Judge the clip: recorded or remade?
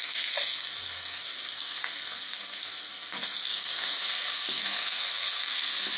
remade